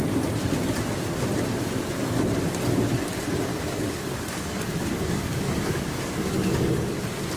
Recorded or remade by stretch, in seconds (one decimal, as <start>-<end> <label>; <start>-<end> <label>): 0.0-3.5 recorded; 3.5-7.0 remade; 7.0-7.4 recorded